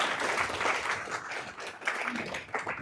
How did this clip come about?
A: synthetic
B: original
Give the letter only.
B